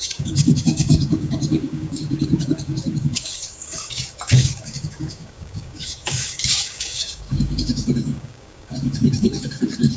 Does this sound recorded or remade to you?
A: remade